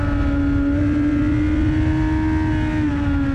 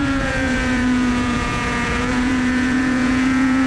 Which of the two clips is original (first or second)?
first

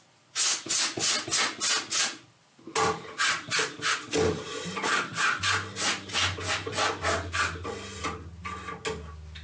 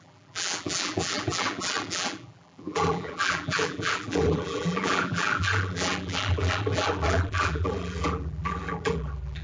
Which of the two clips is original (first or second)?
first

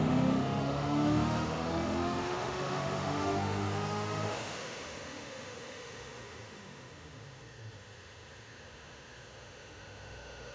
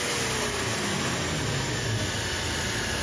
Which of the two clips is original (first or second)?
second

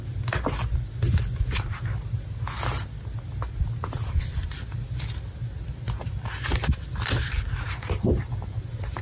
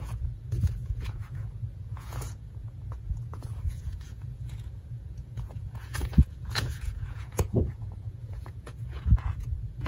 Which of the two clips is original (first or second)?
first